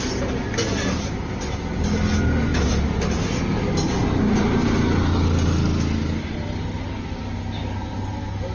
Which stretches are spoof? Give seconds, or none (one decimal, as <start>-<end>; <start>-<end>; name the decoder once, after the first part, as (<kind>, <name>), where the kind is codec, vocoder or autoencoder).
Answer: none